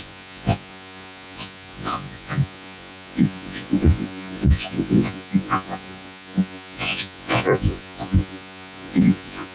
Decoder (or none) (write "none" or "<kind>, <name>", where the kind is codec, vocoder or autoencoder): vocoder, Vocos